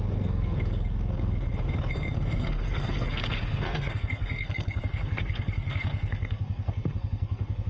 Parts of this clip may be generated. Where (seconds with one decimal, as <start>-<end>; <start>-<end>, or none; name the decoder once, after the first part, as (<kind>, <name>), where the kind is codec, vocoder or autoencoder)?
0.0-1.5 (codec, SNAC); 2.1-7.7